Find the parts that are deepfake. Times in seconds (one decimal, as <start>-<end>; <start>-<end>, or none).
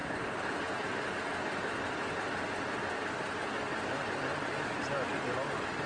none